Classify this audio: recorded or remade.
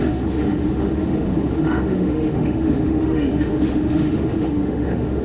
remade